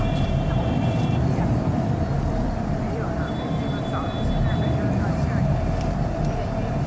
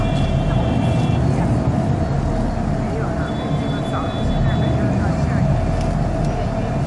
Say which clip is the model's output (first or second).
first